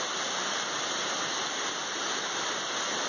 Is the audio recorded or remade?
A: recorded